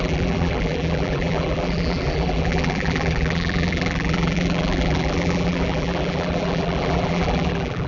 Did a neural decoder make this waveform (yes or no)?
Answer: yes